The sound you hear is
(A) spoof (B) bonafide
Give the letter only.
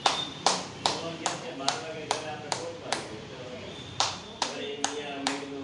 A